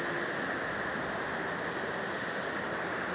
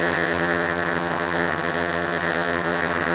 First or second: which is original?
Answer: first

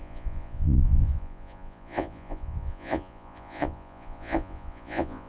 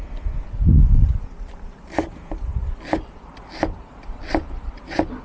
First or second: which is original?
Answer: second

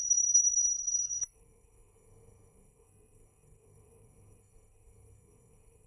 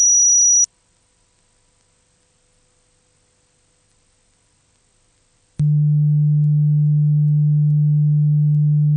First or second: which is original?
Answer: second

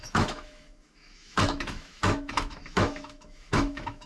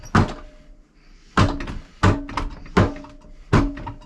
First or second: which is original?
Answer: second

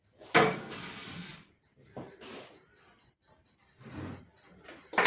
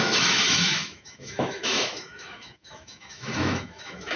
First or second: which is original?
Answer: first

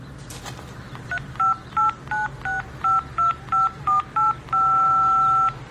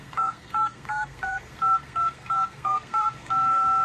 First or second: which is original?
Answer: first